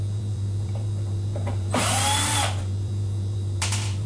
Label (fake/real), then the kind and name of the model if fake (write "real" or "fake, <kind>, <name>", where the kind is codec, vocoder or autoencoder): fake, vocoder, BigVGAN v2